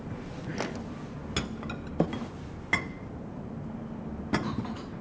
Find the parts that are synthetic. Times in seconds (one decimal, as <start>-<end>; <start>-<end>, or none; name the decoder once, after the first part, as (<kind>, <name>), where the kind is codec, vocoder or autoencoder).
none